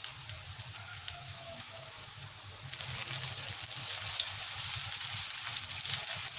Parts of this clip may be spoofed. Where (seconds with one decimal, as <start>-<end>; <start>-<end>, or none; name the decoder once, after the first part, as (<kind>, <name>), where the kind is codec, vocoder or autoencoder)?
0.9-2.2 (autoencoder, DAC-VAE)